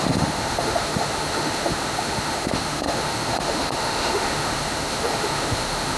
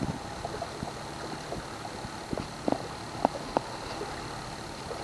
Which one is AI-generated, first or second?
first